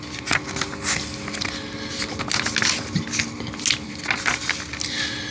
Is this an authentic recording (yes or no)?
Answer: yes